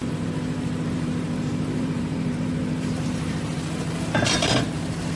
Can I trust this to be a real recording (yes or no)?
no